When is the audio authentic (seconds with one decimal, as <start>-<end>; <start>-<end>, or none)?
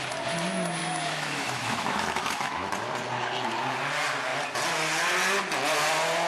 0.0-0.8; 2.7-6.3